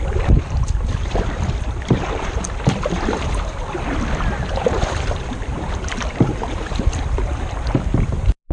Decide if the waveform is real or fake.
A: fake